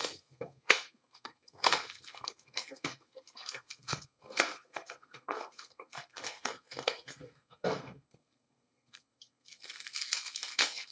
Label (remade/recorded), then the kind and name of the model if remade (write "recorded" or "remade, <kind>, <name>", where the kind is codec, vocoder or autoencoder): remade, codec, SNAC